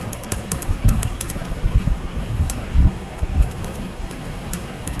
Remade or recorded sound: remade